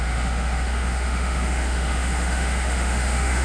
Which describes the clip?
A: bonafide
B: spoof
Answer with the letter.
B